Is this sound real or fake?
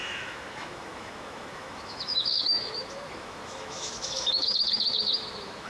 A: fake